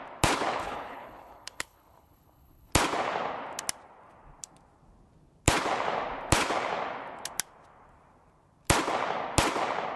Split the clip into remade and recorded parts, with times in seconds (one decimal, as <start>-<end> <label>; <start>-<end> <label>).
0.0-0.6 recorded; 0.6-2.7 remade; 2.7-10.0 recorded